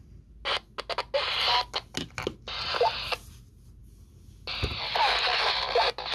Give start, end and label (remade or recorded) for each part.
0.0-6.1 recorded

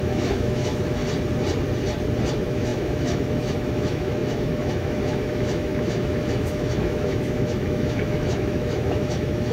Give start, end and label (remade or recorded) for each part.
0.0-1.0 remade; 1.0-2.3 recorded; 2.3-9.5 remade

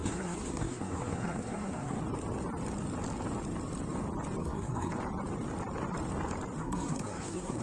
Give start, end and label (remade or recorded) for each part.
0.0-2.0 remade; 2.0-4.4 recorded; 4.4-4.9 remade; 4.9-6.6 recorded; 6.6-7.6 remade

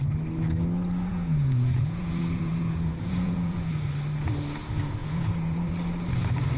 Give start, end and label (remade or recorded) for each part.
0.0-1.1 recorded; 1.1-3.9 remade; 3.9-5.0 recorded; 5.0-5.7 remade; 5.7-6.6 recorded

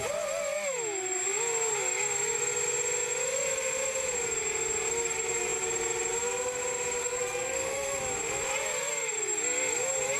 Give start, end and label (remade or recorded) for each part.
0.0-7.0 recorded; 7.0-8.0 remade; 8.0-10.2 recorded

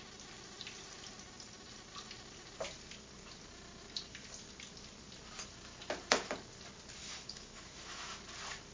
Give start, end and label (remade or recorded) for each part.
0.0-7.0 recorded; 7.0-8.2 remade; 8.2-8.7 recorded

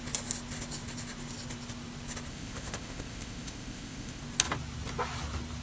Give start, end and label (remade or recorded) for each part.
0.0-2.3 recorded; 2.3-4.2 remade; 4.2-5.6 recorded

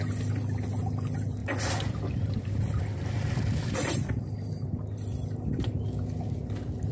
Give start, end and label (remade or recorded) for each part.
0.0-1.4 recorded; 1.4-4.2 remade; 4.2-6.9 recorded